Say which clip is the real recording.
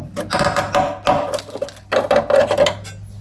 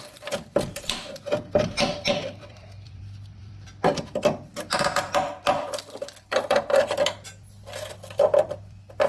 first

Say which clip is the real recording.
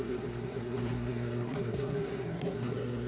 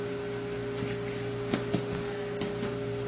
second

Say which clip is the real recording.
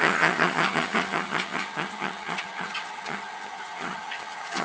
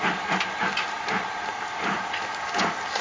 second